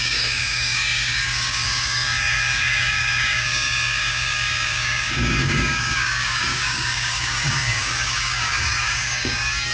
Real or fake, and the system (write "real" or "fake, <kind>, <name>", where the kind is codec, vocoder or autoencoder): fake, codec, DAC